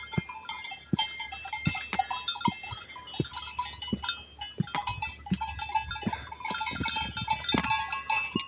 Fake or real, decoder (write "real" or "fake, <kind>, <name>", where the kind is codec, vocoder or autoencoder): real